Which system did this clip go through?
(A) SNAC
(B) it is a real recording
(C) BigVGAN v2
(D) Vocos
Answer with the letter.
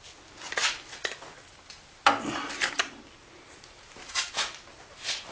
B